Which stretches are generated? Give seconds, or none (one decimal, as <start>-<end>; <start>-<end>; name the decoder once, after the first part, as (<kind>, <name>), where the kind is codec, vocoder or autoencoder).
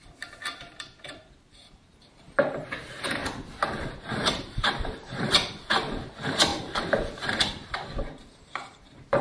0.0-3.2 (vocoder, BigVGAN v2); 3.9-9.2